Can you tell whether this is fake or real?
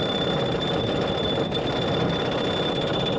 real